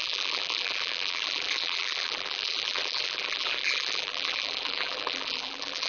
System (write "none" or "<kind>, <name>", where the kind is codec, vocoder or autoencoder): vocoder, BigVGAN v2